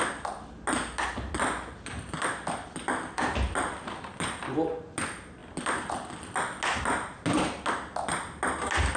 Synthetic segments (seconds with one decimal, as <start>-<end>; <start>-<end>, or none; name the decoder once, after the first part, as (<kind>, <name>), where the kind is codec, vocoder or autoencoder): none